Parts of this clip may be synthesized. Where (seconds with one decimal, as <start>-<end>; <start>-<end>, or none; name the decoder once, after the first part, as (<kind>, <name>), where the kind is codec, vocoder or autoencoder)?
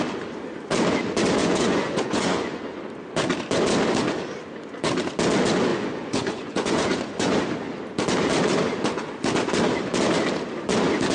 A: 1.4-2.6 (vocoder, Vocos); 5.7-7.4